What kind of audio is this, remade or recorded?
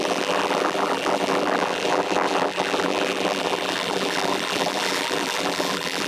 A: remade